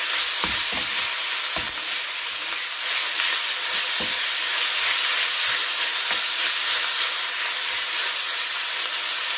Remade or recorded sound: recorded